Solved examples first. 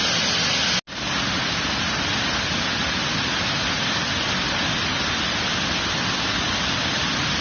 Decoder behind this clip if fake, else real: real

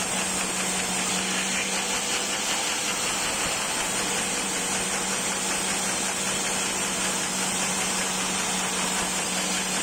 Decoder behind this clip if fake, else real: real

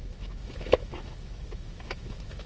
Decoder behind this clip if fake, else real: fake, autoencoder, DAC-VAE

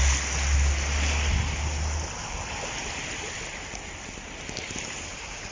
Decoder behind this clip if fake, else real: real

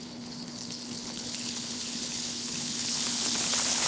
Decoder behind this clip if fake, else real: fake, codec, HILCodec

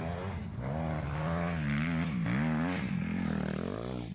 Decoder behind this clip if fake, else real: real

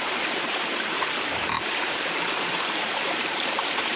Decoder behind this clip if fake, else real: fake, vocoder, BigVGAN v2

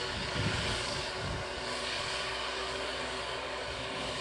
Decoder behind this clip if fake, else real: fake, codec, DAC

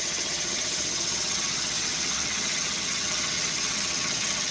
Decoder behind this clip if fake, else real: fake, vocoder, HiFi-GAN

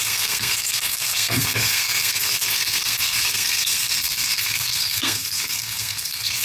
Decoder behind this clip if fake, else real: fake, codec, SNAC